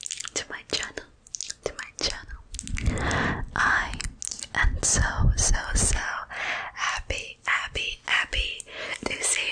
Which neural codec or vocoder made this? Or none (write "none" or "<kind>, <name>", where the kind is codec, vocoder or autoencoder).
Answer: none